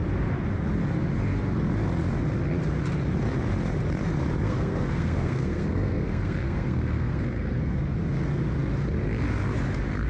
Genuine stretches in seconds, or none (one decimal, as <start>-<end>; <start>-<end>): 0.0-4.4; 7.8-10.1